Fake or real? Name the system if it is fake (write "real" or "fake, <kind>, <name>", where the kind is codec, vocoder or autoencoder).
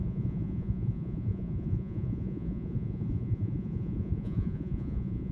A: fake, vocoder, Vocos